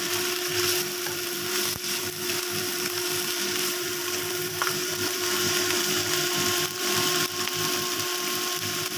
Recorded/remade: remade